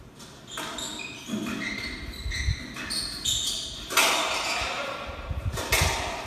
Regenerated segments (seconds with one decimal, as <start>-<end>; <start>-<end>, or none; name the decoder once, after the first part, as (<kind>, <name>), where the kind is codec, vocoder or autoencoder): none